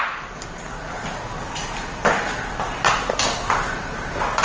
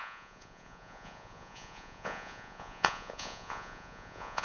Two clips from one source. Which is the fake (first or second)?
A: second